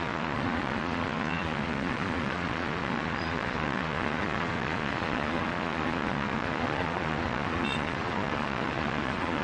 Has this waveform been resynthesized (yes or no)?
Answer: yes